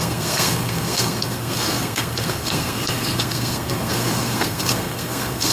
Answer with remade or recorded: remade